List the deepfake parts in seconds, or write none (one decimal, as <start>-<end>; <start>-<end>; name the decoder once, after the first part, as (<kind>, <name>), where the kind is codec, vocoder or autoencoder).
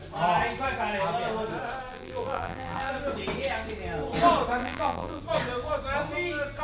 1.9-2.9 (vocoder, BigVGAN v2); 4.6-5.2